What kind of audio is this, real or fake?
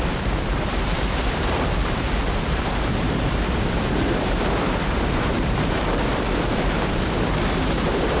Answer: fake